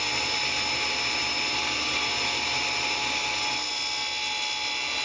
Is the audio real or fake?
real